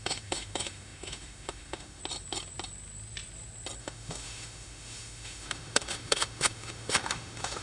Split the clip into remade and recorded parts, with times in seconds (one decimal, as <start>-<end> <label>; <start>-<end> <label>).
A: 0.0-2.0 remade; 2.0-3.8 recorded; 3.8-7.6 remade